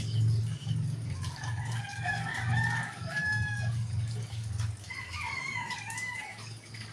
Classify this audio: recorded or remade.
remade